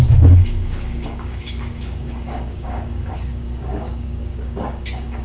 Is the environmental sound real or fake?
fake